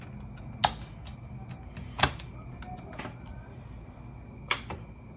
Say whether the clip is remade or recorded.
recorded